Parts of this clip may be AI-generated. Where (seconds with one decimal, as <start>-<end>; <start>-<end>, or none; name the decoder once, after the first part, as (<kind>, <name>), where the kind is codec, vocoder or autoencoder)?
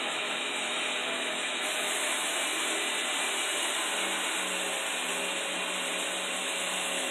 0.0-2.3 (autoencoder, DAC-VAE); 6.4-7.1